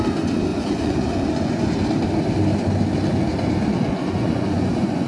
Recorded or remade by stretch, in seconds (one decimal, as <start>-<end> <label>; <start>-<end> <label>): 0.0-0.5 recorded; 0.5-1.7 remade; 1.7-3.1 recorded; 3.1-5.1 remade